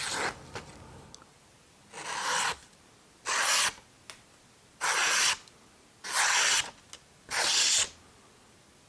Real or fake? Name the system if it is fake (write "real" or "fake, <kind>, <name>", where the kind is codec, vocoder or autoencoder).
real